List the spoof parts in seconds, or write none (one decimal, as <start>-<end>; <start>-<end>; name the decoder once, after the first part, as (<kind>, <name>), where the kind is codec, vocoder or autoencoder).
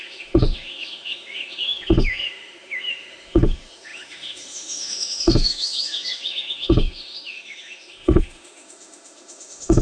0.0-9.8 (autoencoder, DAC-VAE)